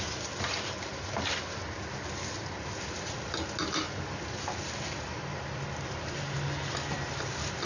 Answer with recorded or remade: recorded